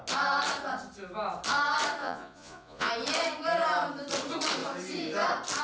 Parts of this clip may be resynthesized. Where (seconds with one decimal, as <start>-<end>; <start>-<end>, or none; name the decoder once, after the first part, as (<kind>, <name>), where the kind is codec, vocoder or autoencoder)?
2.0-2.9 (vocoder, Vocos)